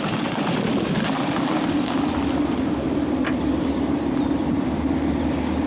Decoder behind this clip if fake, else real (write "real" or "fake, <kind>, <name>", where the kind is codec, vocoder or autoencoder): real